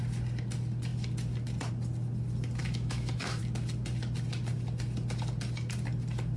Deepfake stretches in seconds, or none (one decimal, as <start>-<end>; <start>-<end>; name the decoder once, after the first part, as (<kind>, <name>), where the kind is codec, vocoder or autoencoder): 2.6-3.4 (autoencoder, DAC-VAE)